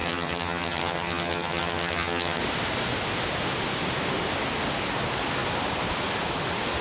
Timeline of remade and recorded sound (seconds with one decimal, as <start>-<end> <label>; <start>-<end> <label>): 0.0-2.4 remade; 2.4-6.8 recorded